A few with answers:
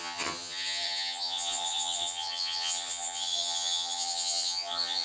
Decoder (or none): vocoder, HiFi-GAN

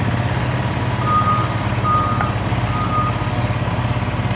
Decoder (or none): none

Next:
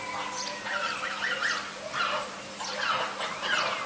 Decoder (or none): none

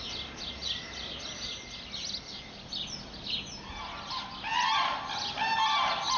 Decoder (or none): none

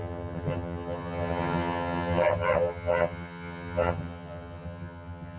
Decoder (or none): vocoder, HiFi-GAN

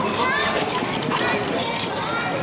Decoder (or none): none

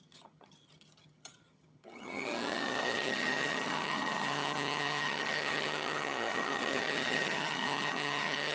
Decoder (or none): vocoder, HiFi-GAN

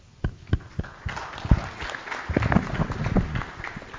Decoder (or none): none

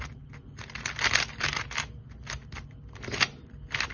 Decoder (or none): none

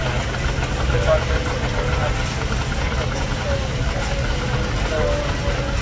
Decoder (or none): none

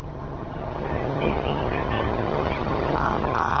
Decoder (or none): vocoder, HiFi-GAN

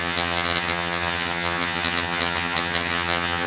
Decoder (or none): vocoder, HiFi-GAN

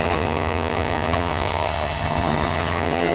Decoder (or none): vocoder, HiFi-GAN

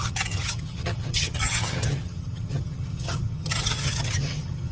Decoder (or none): vocoder, HiFi-GAN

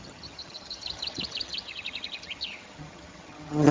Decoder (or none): vocoder, HiFi-GAN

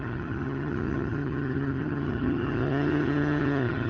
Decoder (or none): vocoder, HiFi-GAN